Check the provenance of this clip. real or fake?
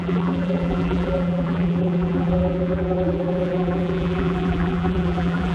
fake